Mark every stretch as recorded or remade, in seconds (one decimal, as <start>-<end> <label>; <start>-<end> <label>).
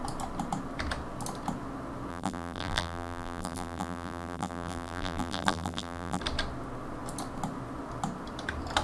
0.0-2.1 recorded; 2.1-6.2 remade; 6.2-8.8 recorded